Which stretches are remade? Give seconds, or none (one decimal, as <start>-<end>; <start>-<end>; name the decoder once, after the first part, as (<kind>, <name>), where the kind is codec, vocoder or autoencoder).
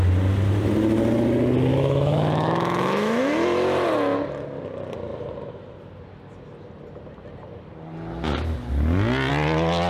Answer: 1.7-3.2 (autoencoder, DAC-VAE)